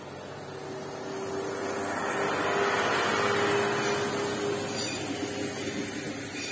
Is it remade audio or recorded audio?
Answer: recorded